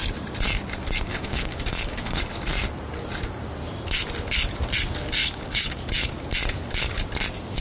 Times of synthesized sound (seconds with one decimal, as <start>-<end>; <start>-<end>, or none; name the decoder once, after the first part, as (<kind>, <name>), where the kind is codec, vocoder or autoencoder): 1.1-2.2 (codec, DAC); 5.2-5.8